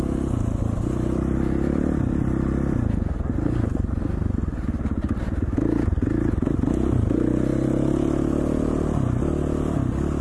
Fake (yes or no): no